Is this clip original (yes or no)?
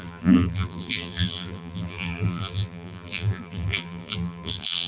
no